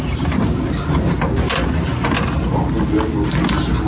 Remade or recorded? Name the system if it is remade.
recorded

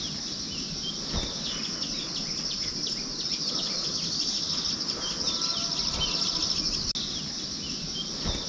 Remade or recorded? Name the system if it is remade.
recorded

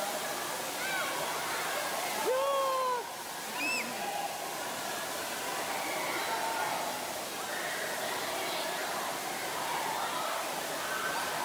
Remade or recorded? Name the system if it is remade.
recorded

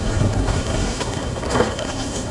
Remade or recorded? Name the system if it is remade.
remade, codec, SNAC